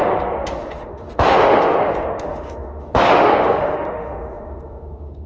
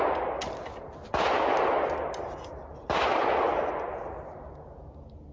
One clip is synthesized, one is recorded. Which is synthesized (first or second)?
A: first